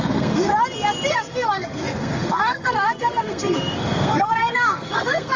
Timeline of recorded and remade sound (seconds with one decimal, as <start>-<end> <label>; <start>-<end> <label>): 0.0-0.5 remade; 0.5-1.1 recorded; 1.1-5.4 remade